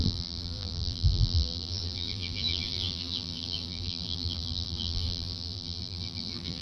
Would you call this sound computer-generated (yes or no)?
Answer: yes